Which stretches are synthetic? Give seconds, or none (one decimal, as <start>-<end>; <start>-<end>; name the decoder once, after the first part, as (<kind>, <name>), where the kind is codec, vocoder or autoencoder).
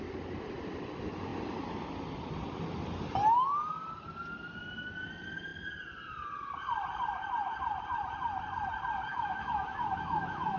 9.1-10.6 (autoencoder, DAC-VAE)